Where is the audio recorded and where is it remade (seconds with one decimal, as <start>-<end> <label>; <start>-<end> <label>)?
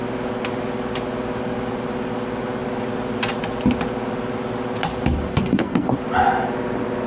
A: 0.0-5.3 recorded; 5.3-5.9 remade; 5.9-7.1 recorded